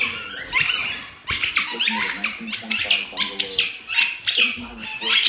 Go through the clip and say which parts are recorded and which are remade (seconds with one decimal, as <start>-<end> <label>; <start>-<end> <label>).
0.0-5.3 recorded